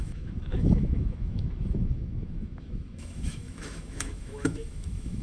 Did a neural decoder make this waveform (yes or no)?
yes